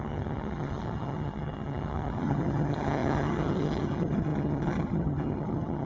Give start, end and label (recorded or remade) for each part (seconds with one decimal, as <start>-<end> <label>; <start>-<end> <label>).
0.0-5.9 remade